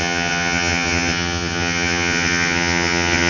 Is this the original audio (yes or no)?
no